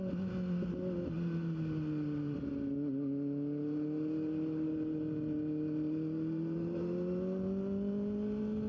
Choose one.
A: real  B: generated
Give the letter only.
A